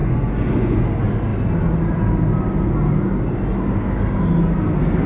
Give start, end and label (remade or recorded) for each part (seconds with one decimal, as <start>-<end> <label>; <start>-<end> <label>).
0.0-0.8 remade; 0.8-5.1 recorded